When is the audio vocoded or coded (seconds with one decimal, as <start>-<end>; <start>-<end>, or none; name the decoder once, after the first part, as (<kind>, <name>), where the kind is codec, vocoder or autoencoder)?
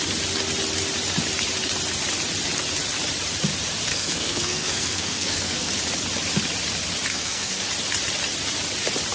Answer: 3.9-5.7 (codec, SNAC); 7.1-7.7